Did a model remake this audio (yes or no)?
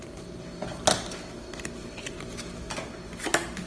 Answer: no